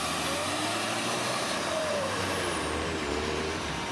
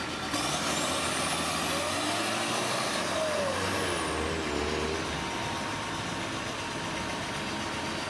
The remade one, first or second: first